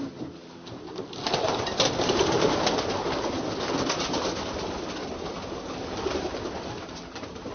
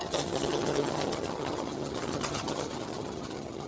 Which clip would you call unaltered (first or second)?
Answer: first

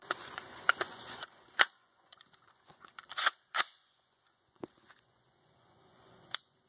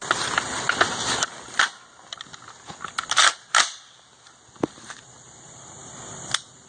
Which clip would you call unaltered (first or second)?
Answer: second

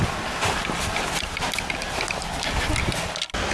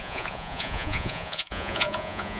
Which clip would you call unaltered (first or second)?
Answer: first